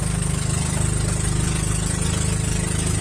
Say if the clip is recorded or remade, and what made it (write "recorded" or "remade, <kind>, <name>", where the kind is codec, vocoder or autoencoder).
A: recorded